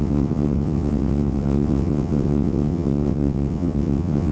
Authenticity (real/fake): fake